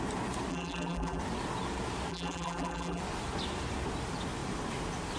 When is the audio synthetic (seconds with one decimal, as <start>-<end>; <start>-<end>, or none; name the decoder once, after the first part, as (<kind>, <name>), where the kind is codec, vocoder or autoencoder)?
0.5-1.2 (vocoder, BigVGAN v2); 2.1-3.0